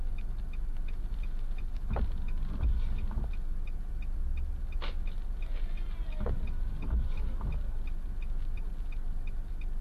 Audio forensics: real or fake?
real